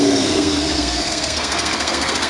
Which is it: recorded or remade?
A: remade